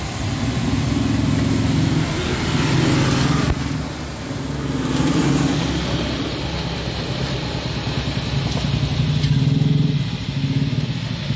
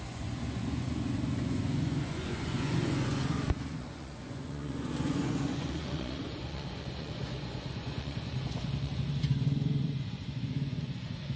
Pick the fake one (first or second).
second